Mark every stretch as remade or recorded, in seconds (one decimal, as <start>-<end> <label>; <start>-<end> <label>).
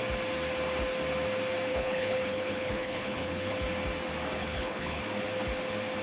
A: 0.0-1.7 recorded; 1.7-3.5 remade; 3.5-4.4 recorded; 4.4-5.0 remade; 5.0-6.0 recorded